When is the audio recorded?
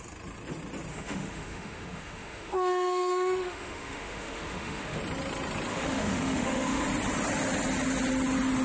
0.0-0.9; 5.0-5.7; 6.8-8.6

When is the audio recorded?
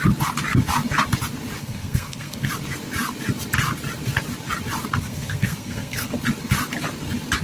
0.0-1.6; 2.5-5.0; 6.1-7.4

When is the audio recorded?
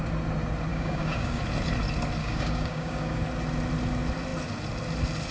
0.0-0.7; 1.4-2.2; 3.2-5.3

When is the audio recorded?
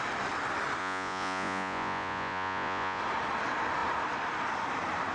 0.0-0.8; 3.0-5.1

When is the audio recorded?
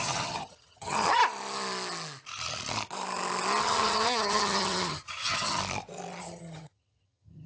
1.2-3.6; 5.6-6.2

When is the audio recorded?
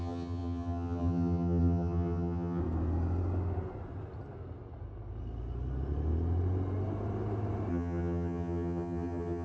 2.6-7.7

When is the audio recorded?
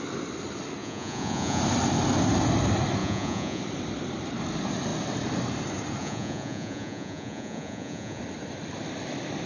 0.0-0.8; 1.6-3.0; 3.6-6.0; 8.2-9.5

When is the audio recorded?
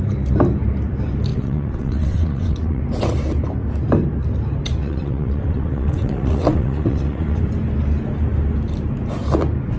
0.0-1.3; 2.8-4.8; 7.4-9.8